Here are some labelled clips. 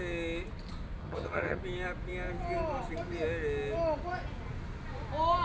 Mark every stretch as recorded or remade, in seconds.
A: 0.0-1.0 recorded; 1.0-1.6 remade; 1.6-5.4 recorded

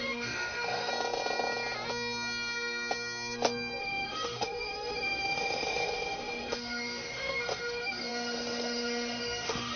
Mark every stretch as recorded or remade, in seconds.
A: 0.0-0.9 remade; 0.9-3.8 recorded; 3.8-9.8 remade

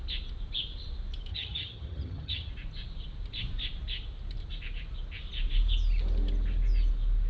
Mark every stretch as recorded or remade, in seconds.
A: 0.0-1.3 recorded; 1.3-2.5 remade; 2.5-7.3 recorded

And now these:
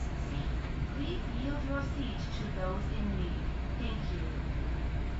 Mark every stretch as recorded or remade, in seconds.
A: 0.0-5.2 remade

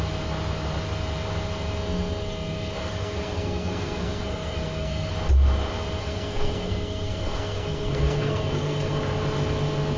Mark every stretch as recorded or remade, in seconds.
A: 0.0-2.8 recorded; 2.8-5.1 remade; 5.1-6.0 recorded; 6.0-9.0 remade; 9.0-10.0 recorded

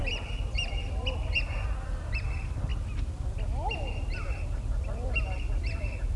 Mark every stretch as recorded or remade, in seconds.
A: 0.0-0.7 remade; 0.7-6.2 recorded

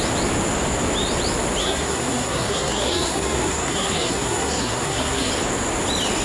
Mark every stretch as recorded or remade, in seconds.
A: 0.0-1.6 recorded; 1.6-5.3 remade; 5.3-6.2 recorded